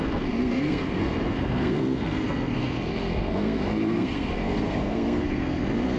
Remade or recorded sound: remade